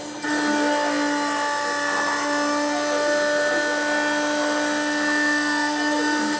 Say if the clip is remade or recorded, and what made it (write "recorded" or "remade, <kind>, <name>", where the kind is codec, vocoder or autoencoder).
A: recorded